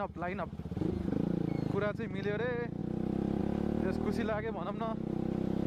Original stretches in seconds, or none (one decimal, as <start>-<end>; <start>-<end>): 0.0-5.7